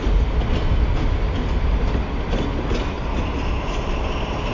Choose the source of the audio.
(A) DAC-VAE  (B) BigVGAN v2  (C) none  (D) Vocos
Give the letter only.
C